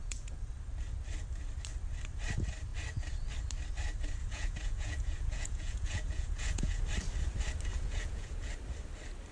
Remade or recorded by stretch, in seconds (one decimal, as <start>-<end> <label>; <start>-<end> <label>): 0.0-0.5 remade; 0.5-4.2 recorded; 4.2-6.8 remade; 6.8-7.7 recorded; 7.7-8.5 remade; 8.5-9.3 recorded